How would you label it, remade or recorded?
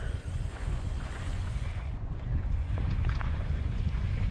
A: remade